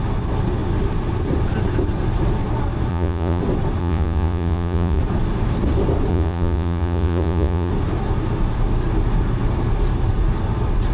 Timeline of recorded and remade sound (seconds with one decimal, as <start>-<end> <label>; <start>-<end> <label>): 0.0-2.9 recorded; 2.9-3.4 remade; 3.4-3.8 recorded; 3.8-5.0 remade; 5.0-6.1 recorded; 6.1-7.7 remade; 7.7-10.9 recorded